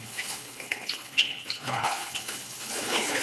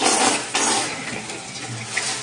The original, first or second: second